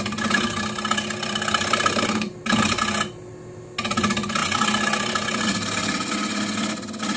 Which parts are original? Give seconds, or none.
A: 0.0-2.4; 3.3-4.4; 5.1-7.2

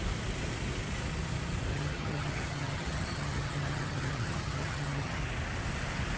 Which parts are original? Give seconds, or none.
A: 0.0-1.7; 5.2-6.2

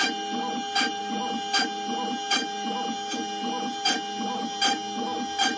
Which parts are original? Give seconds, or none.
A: 0.0-5.6

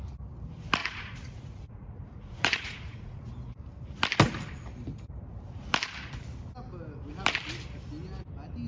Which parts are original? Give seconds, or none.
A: 0.0-0.8; 3.2-8.7